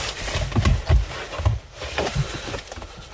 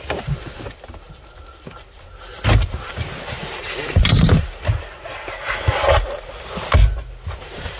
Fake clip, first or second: first